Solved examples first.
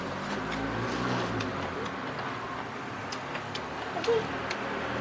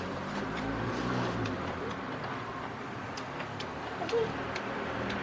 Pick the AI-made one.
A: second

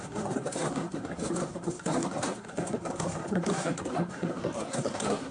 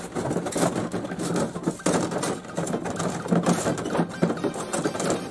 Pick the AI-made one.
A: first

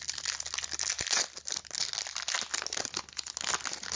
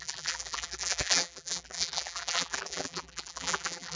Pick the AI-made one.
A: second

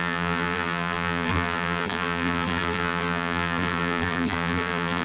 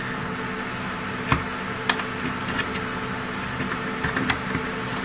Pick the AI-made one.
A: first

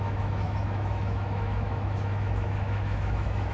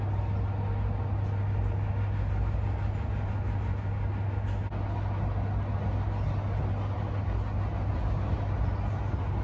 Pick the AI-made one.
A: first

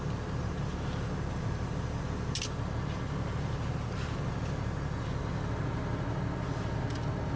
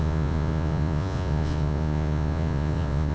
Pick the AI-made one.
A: second